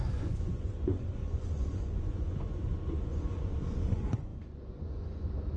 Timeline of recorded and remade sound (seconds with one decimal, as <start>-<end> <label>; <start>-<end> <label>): 0.0-5.6 remade